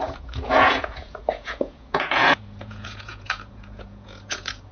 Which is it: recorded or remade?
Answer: remade